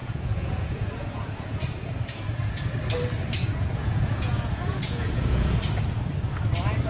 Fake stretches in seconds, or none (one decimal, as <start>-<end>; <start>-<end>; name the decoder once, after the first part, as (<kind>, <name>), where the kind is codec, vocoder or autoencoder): 0.0-2.6 (vocoder, Vocos); 3.4-5.6